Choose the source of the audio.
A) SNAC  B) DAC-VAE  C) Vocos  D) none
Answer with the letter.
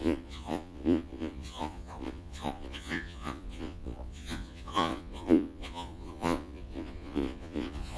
C